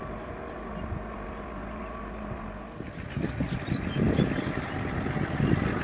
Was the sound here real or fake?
real